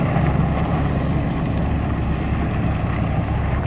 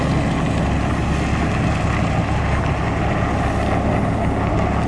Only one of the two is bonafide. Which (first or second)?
second